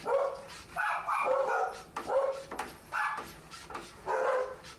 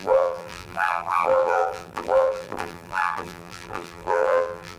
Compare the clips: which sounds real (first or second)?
first